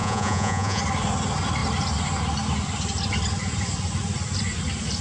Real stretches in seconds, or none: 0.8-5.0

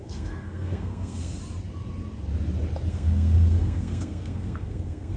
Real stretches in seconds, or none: 1.4-2.9

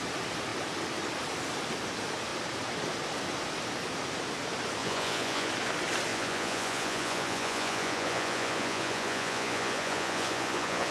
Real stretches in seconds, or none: 0.0-4.8; 5.5-6.1